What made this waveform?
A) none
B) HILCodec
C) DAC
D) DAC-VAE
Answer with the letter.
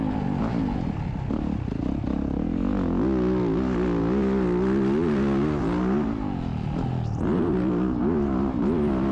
A